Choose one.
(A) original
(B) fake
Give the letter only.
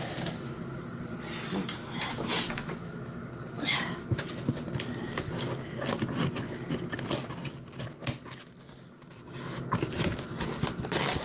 A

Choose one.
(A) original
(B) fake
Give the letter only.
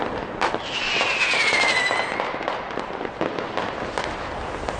A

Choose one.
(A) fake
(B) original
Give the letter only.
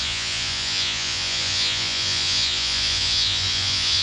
A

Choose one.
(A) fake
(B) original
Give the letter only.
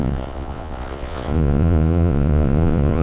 A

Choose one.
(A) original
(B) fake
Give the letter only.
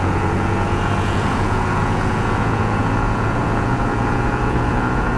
B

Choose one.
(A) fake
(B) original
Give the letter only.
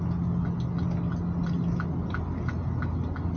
B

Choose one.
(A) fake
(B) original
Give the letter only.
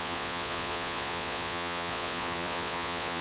A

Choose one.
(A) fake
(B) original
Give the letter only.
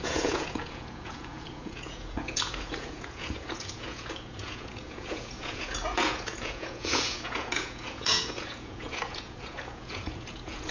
A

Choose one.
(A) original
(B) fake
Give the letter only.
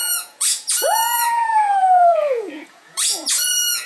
B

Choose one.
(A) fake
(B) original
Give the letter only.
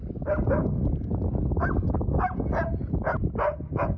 B